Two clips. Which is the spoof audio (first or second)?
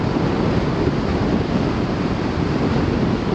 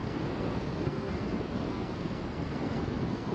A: second